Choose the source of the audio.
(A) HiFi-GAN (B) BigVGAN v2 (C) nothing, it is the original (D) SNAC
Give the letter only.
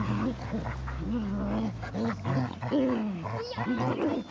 C